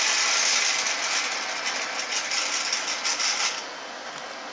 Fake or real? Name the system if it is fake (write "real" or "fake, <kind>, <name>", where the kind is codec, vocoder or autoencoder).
real